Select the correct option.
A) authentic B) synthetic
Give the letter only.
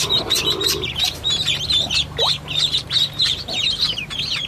B